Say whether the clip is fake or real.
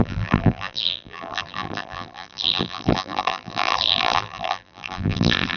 fake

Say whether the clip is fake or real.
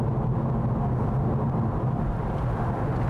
real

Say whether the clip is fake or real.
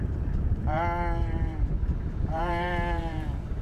fake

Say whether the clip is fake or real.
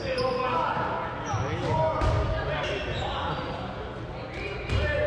real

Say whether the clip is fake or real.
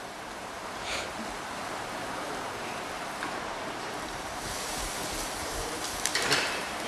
fake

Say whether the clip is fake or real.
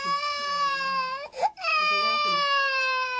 fake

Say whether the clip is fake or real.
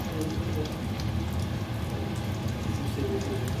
real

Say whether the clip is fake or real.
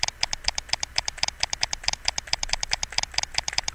fake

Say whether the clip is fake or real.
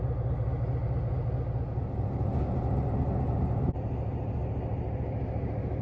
real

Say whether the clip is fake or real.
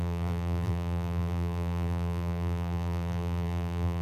fake